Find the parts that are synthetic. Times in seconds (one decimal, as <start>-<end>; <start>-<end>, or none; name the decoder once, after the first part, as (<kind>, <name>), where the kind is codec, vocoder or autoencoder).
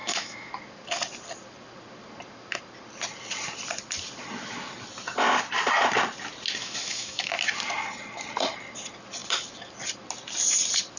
0.0-0.5 (autoencoder, DAC-VAE); 6.6-7.3